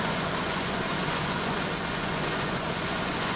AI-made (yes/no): yes